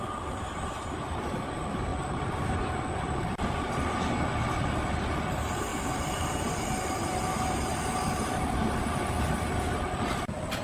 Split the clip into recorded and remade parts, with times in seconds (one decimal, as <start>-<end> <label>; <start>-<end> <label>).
0.0-10.6 recorded